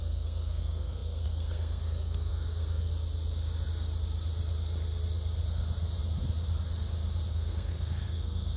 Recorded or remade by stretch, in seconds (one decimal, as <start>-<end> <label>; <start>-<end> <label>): 0.0-2.9 remade; 2.9-7.3 recorded; 7.3-8.6 remade